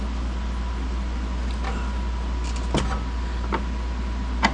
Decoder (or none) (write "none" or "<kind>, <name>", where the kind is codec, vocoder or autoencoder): none